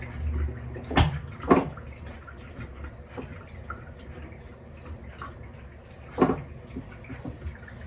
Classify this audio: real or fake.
real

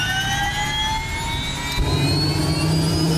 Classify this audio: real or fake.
real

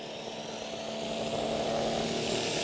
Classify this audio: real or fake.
real